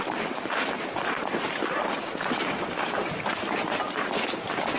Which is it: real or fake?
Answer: fake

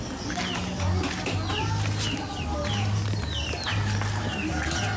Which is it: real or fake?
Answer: real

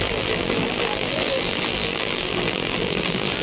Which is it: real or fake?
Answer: fake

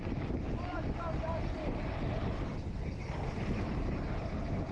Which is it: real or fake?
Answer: real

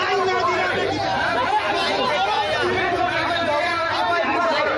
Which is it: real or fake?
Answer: real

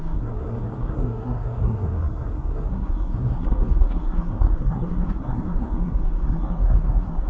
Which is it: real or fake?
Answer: fake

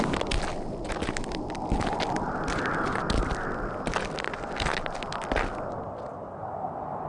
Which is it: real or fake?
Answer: real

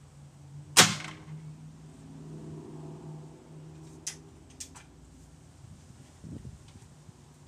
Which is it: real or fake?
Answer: real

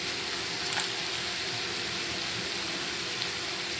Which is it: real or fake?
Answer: real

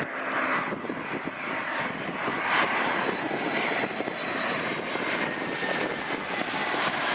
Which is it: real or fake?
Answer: real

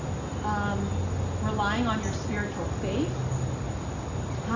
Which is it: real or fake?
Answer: real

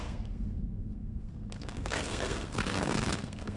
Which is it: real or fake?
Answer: fake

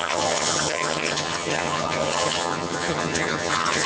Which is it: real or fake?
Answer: fake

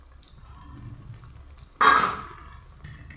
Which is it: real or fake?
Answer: real